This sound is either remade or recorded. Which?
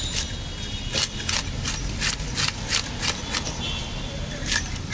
recorded